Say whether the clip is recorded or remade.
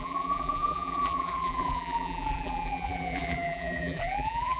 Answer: remade